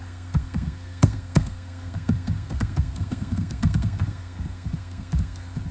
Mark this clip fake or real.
fake